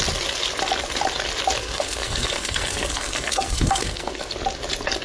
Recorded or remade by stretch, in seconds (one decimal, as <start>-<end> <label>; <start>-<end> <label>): 0.0-1.6 recorded; 1.6-4.3 remade; 4.3-5.0 recorded